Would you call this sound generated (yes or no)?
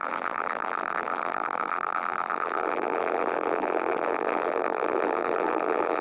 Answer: yes